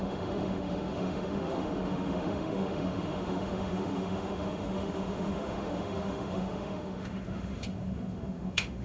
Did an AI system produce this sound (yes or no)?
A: yes